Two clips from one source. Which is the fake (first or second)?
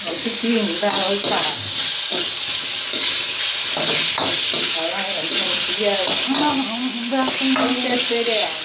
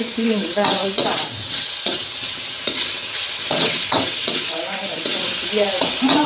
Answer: second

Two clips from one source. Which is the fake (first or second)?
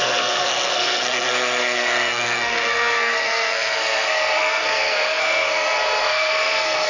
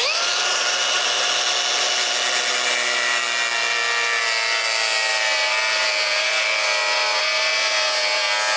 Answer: first